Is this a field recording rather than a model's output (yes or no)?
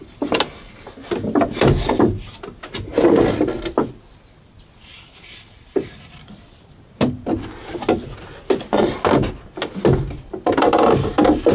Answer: yes